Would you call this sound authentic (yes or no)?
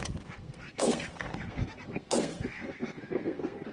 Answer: no